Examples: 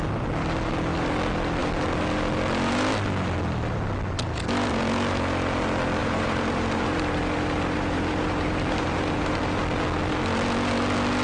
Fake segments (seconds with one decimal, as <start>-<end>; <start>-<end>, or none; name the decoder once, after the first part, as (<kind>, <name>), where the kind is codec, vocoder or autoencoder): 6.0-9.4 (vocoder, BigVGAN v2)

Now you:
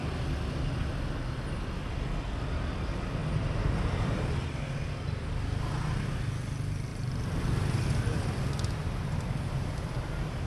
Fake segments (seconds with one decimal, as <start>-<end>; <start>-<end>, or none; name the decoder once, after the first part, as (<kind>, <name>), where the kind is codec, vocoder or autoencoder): 3.2-4.8 (vocoder, BigVGAN v2); 6.9-7.5

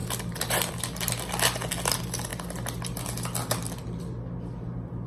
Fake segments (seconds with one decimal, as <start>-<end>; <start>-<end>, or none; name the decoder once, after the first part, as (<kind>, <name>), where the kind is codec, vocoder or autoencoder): none

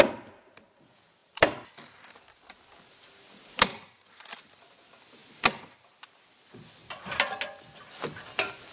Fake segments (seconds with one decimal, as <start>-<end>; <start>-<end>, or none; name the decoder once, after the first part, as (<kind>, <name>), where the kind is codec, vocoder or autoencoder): 1.2-1.7 (vocoder, BigVGAN v2); 3.7-4.5

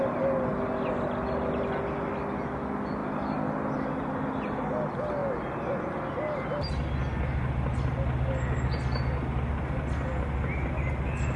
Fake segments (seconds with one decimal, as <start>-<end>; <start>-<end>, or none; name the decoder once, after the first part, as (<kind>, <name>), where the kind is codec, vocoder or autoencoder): 3.0-4.0 (vocoder, BigVGAN v2); 5.2-9.5

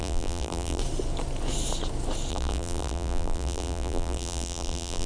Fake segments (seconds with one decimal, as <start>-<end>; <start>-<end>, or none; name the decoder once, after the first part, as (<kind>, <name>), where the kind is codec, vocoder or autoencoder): 0.0-0.8 (vocoder, BigVGAN v2); 2.3-5.1

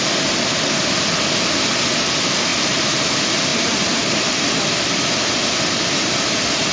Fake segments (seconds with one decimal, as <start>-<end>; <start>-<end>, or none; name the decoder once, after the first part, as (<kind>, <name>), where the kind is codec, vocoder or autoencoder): 2.5-3.0 (vocoder, BigVGAN v2); 3.5-4.5

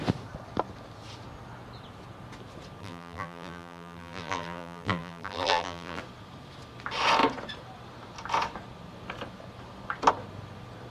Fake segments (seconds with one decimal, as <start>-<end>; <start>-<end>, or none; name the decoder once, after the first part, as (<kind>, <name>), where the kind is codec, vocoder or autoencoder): 2.8-6.0 (vocoder, BigVGAN v2)